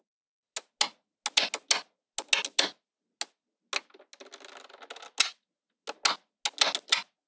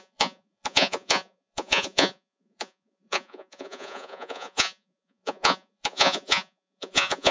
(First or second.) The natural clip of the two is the first